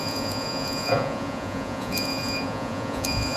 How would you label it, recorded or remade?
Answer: remade